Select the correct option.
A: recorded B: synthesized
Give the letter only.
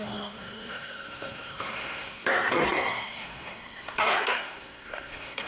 B